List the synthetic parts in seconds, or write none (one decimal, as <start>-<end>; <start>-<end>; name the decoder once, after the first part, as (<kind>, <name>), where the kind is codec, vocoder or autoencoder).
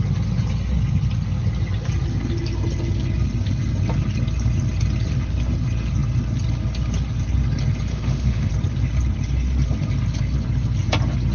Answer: 7.9-8.5 (autoencoder, DAC-VAE)